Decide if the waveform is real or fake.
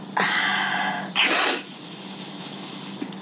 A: real